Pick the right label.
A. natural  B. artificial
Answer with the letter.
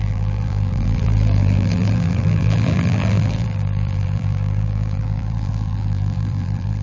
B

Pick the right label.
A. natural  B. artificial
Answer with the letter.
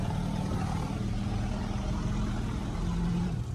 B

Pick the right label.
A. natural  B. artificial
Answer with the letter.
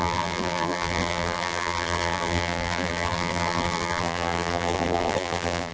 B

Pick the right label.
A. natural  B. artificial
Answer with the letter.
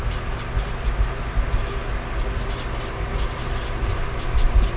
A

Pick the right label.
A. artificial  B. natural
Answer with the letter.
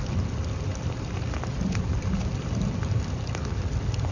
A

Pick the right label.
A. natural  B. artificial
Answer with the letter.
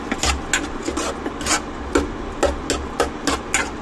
A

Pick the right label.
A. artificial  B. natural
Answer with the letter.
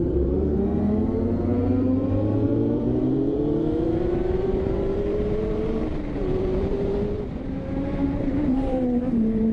A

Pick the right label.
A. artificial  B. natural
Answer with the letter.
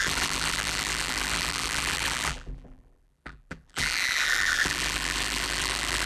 A